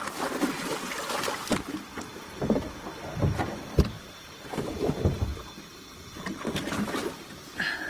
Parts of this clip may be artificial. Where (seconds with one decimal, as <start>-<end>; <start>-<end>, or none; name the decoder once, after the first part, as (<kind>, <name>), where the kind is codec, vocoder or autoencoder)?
2.1-2.9 (vocoder, BigVGAN v2)